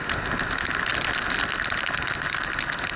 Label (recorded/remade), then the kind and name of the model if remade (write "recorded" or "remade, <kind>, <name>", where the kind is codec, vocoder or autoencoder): recorded